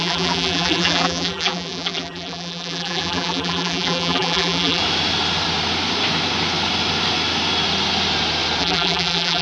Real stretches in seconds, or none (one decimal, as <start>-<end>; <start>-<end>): 4.8-8.6